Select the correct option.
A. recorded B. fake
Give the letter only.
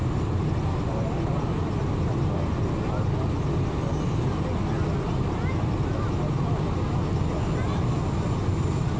A